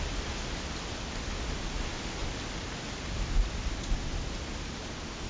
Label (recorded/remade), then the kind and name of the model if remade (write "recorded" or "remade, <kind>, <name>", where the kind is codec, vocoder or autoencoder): recorded